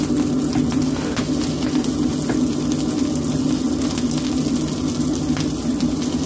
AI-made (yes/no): no